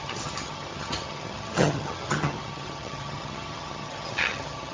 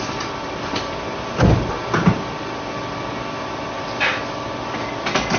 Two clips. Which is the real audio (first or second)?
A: second